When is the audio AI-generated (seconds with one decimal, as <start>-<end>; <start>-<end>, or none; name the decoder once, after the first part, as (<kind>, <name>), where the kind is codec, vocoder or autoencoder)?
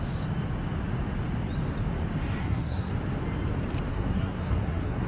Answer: 2.4-2.9 (codec, SNAC); 3.9-5.1